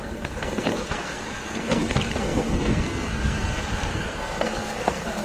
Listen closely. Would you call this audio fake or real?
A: fake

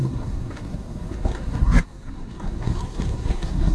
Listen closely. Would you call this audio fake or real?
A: fake